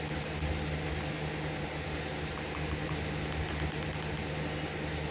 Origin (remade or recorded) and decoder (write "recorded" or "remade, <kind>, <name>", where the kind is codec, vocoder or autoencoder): recorded